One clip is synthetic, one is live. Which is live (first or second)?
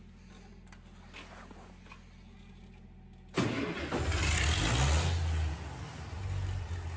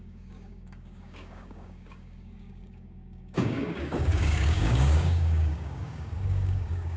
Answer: first